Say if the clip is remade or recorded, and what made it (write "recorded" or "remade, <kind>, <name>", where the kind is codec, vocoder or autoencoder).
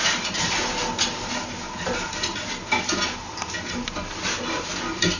recorded